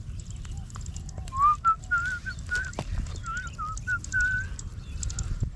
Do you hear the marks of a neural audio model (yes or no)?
no